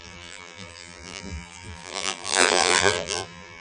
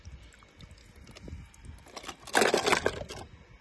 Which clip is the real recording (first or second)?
second